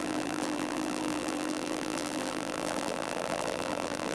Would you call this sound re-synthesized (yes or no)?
yes